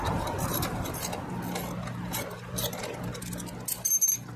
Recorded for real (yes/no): yes